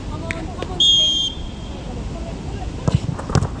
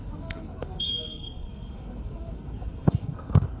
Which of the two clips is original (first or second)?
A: first